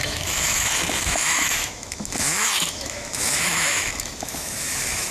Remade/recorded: remade